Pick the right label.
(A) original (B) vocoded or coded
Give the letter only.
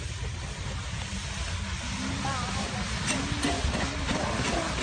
A